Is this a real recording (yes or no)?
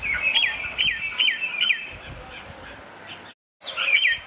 yes